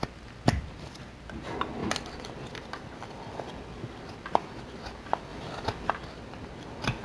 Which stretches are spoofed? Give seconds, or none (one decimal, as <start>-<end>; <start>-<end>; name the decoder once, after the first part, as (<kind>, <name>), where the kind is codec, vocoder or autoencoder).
none